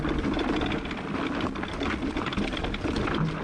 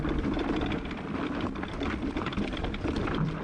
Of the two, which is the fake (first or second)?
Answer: second